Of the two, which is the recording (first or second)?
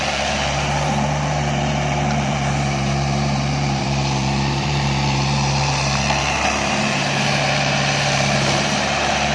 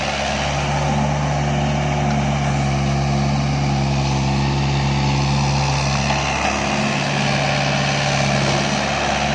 second